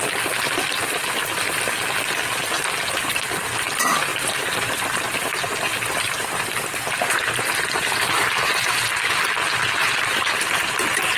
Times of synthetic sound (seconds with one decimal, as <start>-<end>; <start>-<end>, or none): 4.1-8.7; 9.8-11.2